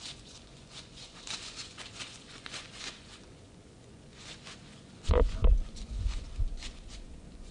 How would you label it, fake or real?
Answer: fake